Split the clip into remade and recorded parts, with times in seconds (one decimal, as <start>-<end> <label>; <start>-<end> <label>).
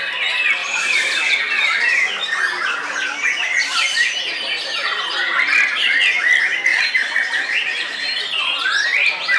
0.0-0.6 recorded; 0.6-1.3 remade; 1.3-6.7 recorded; 6.7-8.2 remade; 8.2-9.4 recorded